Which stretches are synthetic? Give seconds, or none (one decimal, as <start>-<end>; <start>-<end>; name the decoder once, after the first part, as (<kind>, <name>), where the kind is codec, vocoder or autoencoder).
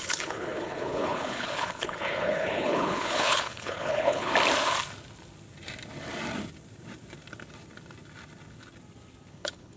0.0-4.3 (codec, HILCodec); 9.3-9.8